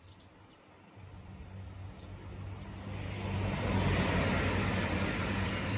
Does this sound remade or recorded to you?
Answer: recorded